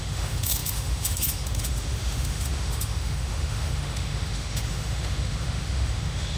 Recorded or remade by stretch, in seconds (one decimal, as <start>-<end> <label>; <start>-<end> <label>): 0.0-6.4 remade